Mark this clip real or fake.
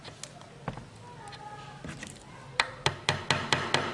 real